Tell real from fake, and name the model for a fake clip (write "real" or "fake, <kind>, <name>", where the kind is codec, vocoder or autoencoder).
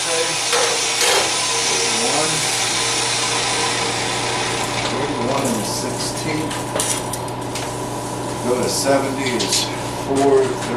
real